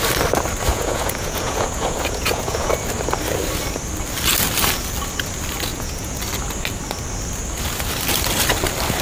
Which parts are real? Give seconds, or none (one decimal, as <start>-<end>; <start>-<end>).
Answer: 0.0-0.7; 2.7-5.7; 6.2-9.0